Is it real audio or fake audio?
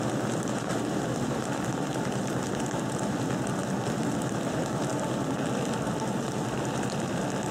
real